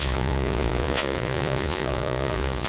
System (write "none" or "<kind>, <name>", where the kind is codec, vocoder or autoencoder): vocoder, Vocos